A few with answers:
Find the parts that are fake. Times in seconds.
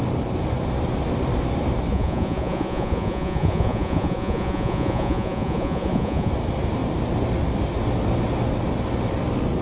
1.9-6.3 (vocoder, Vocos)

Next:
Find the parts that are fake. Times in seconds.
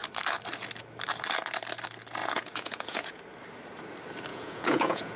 2.2-3.2 (vocoder, Vocos); 4.3-5.2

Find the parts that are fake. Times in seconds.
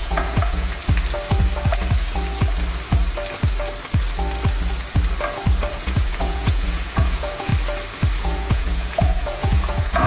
0.0-0.8 (vocoder, Vocos); 5.7-7.5; 8.2-10.1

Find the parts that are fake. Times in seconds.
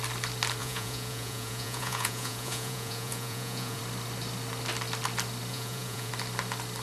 0.6-3.8 (vocoder, Vocos); 5.5-6.1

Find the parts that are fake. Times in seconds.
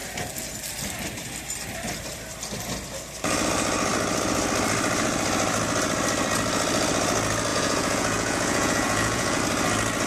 7.5-9.4 (vocoder, Vocos)